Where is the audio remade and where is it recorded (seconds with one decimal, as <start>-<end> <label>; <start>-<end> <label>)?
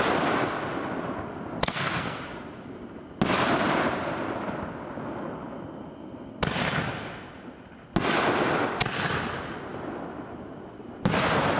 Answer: 0.0-1.6 recorded; 1.6-2.2 remade; 2.2-11.6 recorded